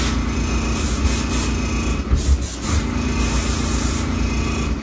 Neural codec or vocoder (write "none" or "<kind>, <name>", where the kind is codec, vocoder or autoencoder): none